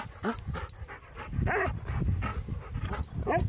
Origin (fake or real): real